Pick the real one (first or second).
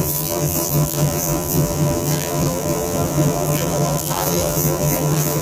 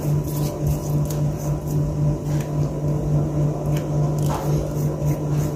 second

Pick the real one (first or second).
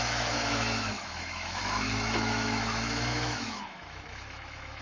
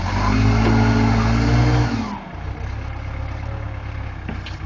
second